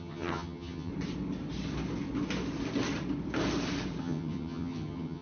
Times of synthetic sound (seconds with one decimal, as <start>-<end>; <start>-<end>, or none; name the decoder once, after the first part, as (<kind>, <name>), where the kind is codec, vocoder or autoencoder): 0.0-0.9 (vocoder, HiFi-GAN); 4.0-5.2